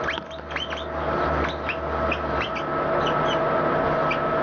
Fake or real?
real